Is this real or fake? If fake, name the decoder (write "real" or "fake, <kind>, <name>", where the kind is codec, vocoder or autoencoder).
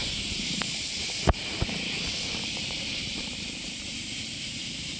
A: fake, vocoder, BigVGAN v2